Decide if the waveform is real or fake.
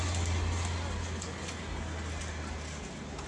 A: real